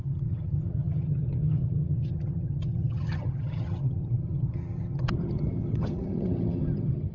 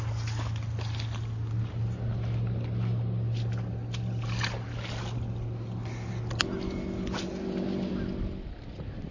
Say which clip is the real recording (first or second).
second